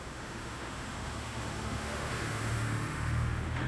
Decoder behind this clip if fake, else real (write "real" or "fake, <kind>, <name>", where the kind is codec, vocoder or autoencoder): fake, autoencoder, DAC-VAE